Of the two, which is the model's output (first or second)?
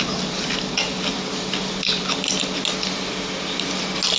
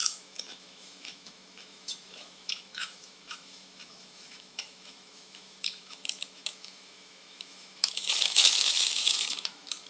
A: second